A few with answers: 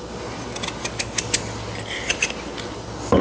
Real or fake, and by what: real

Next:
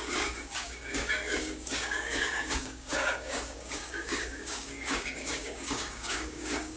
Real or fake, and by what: fake, codec, DAC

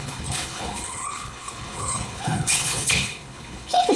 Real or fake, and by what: fake, codec, HILCodec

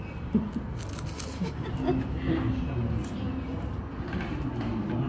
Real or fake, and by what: real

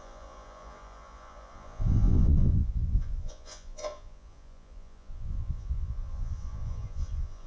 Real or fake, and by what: fake, vocoder, Vocos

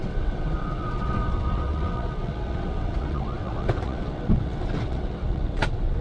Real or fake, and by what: fake, vocoder, WaveNeXt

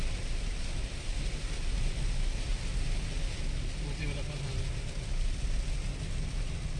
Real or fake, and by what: real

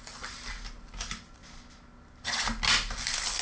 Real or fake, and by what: real